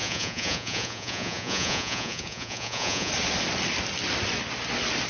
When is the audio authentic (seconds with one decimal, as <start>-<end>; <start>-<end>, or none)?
3.1-5.1